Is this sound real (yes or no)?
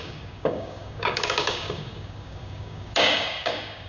no